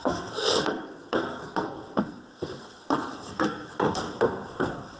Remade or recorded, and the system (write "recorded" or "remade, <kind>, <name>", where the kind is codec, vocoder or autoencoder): remade, codec, SNAC